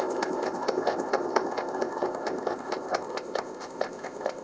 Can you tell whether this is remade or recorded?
remade